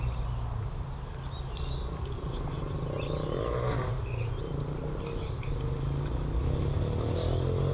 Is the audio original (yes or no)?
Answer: yes